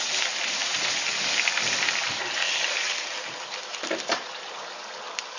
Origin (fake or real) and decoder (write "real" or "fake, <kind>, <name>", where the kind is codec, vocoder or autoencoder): fake, vocoder, BigVGAN v2